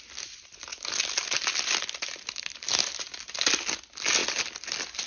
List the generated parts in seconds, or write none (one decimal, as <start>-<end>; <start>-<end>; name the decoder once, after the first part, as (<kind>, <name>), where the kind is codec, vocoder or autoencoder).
none